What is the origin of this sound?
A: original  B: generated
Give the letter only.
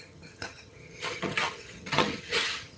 B